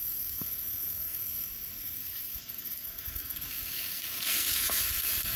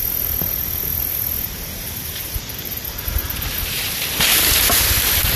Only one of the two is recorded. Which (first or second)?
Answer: second